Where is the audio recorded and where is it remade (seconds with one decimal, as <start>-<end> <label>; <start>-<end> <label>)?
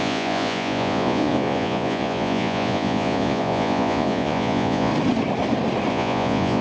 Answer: 0.0-4.9 remade; 4.9-5.9 recorded; 5.9-6.6 remade